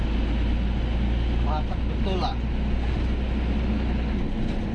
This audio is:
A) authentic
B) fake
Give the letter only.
A